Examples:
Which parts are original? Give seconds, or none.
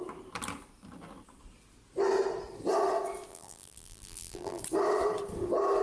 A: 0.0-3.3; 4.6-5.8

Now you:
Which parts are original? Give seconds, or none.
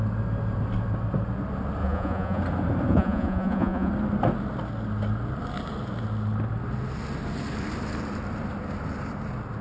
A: 0.0-1.8; 2.4-2.9; 3.9-9.6